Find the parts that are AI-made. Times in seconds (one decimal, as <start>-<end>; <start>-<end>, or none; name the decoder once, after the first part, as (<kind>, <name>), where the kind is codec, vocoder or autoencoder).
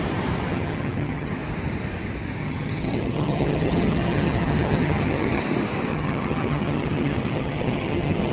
0.5-1.3 (vocoder, HiFi-GAN); 2.4-5.4; 5.9-8.3